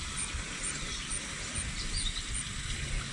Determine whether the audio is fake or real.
real